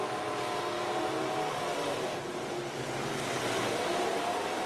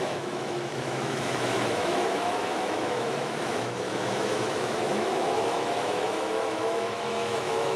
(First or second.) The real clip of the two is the first